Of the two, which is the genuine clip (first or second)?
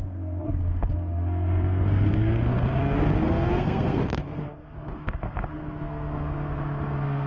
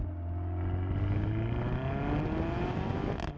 second